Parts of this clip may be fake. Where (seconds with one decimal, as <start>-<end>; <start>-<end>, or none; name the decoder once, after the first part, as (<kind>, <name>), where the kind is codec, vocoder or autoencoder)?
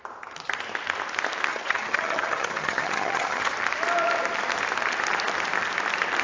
1.5-3.5 (vocoder, HiFi-GAN)